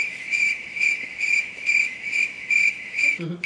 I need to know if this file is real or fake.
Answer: fake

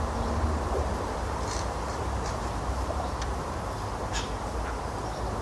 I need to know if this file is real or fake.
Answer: fake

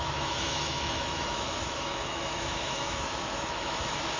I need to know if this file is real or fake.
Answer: fake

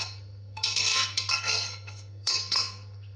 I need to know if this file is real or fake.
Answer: fake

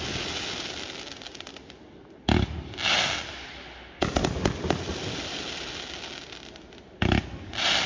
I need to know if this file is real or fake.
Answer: real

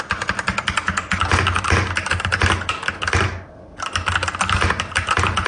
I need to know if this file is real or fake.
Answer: real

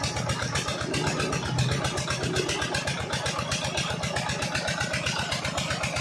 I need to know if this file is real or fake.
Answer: real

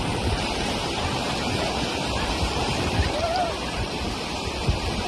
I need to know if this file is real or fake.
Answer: fake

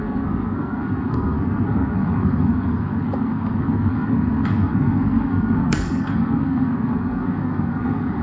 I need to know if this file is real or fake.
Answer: fake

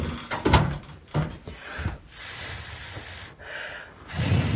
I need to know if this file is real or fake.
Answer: fake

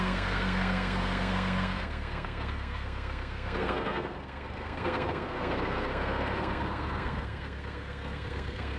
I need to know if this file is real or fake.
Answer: fake